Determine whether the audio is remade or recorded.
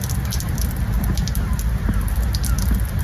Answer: recorded